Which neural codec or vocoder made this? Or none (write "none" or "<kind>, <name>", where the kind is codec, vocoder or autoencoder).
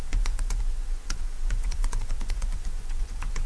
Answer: vocoder, Vocos